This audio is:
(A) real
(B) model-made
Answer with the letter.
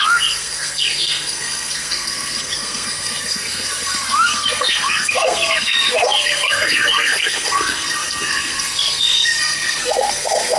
B